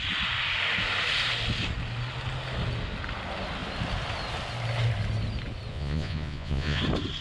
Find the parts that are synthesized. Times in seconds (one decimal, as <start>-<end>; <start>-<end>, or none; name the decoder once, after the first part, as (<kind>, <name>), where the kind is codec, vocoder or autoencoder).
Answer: 5.7-6.8 (vocoder, Vocos)